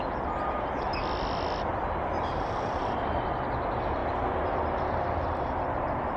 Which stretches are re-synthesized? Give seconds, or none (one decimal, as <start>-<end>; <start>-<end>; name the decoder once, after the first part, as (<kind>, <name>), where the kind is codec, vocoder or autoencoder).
1.7-2.8 (vocoder, BigVGAN v2)